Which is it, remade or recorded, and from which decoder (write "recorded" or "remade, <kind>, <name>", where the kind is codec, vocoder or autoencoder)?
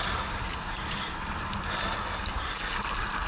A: recorded